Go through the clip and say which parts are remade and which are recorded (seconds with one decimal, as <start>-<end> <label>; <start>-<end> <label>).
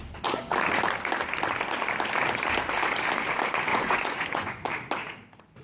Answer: 0.0-3.7 recorded; 3.7-4.7 remade; 4.7-5.6 recorded